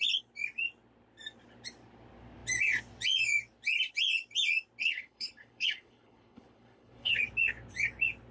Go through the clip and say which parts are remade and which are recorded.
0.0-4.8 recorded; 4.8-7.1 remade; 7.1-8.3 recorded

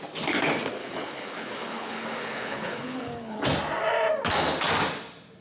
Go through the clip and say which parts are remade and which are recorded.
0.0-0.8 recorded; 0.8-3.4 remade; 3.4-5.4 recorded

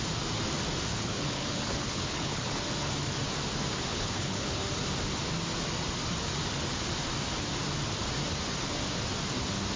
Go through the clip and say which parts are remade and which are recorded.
0.0-0.9 recorded; 0.9-2.6 remade; 2.6-3.9 recorded; 3.9-4.6 remade; 4.6-9.8 recorded

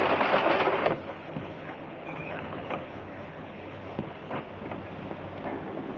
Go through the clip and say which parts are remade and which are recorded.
0.0-0.8 recorded; 0.8-4.4 remade; 4.4-6.0 recorded